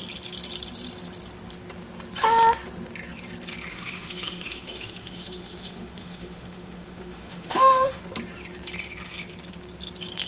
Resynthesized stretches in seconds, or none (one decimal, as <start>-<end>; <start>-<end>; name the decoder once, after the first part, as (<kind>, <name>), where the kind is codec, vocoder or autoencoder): 3.7-8.0 (autoencoder, DAC-VAE)